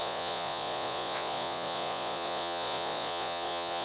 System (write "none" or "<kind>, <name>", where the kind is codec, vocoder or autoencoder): vocoder, Vocos